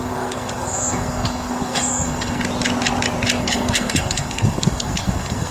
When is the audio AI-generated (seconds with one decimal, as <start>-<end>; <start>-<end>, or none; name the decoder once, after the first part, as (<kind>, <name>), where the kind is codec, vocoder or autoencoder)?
0.0-2.4 (codec, SNAC); 3.4-5.5